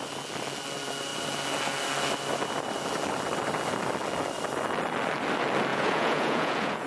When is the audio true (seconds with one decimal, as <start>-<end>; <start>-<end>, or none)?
0.0-5.7